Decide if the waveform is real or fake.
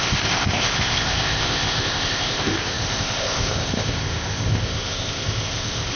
fake